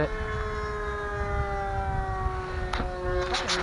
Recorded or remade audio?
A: recorded